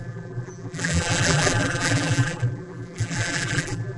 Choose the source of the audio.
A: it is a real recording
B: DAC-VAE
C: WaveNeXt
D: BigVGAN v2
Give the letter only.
D